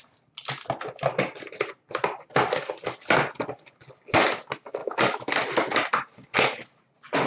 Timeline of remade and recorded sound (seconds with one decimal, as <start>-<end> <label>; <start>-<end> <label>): 0.0-4.8 recorded; 4.8-5.3 remade; 5.3-7.3 recorded